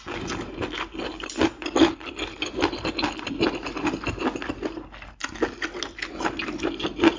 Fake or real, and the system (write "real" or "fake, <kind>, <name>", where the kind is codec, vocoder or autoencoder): real